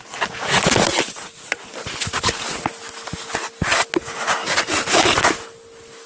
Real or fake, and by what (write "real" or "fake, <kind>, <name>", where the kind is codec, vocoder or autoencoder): real